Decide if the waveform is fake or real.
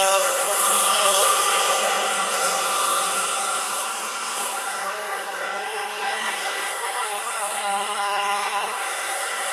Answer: fake